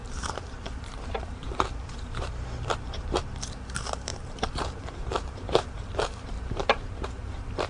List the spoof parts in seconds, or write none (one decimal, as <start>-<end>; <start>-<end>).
0.0-3.2; 4.1-7.7